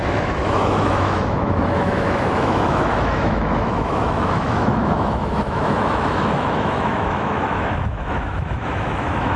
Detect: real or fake fake